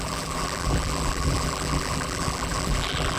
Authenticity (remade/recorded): remade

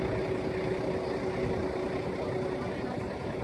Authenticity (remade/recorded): recorded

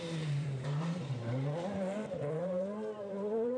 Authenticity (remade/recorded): remade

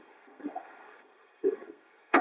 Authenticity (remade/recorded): remade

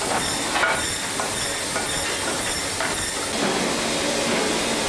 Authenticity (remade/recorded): recorded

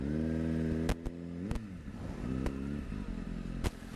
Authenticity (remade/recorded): recorded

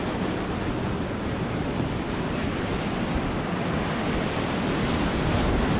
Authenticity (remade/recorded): recorded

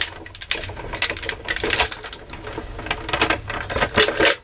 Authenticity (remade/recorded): recorded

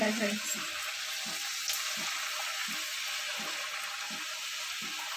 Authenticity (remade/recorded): recorded